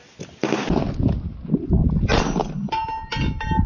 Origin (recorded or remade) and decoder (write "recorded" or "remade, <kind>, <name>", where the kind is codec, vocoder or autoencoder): recorded